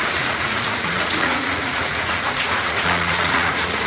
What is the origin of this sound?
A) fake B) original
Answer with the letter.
A